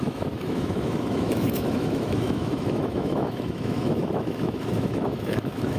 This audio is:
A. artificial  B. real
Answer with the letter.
A